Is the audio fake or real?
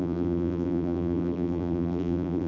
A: fake